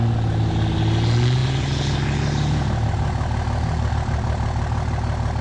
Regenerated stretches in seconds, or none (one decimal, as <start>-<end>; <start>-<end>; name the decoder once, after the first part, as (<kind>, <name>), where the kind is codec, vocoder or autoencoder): none